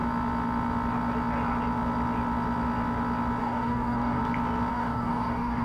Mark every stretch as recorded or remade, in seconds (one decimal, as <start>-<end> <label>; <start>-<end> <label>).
0.0-3.4 recorded; 3.4-4.2 remade; 4.2-4.7 recorded; 4.7-5.6 remade